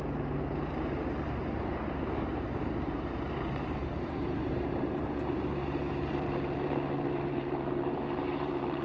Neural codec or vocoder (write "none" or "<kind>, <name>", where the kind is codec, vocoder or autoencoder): vocoder, BigVGAN v2